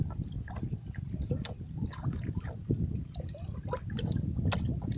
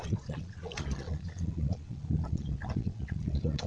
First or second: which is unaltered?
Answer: first